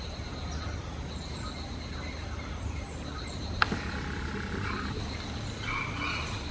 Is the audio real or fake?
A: real